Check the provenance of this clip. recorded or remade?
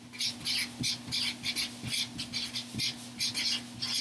recorded